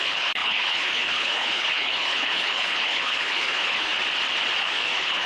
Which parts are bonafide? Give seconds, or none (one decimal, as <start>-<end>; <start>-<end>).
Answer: 3.9-4.6